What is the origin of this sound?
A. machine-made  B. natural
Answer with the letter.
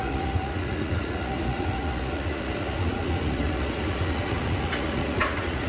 A